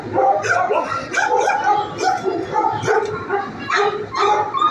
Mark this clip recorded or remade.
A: recorded